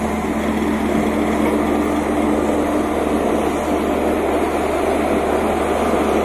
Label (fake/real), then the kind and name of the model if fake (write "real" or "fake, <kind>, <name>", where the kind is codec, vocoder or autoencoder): real